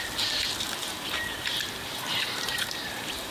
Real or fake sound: fake